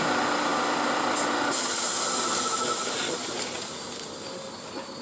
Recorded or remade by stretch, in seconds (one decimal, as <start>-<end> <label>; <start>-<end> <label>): 0.0-5.0 recorded